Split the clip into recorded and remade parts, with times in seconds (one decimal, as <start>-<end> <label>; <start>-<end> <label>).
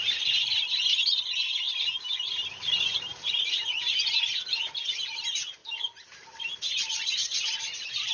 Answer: 0.0-8.1 recorded